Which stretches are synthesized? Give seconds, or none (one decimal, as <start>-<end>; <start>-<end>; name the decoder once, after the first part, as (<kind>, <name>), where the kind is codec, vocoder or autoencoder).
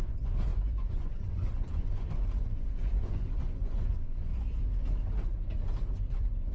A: 0.0-4.3 (vocoder, Vocos); 6.1-6.5